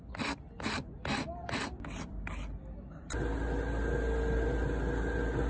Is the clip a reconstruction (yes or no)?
no